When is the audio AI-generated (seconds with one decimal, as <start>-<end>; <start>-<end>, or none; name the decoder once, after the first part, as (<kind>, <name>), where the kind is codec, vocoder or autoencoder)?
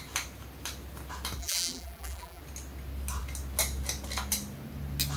1.4-2.4 (vocoder, BigVGAN v2)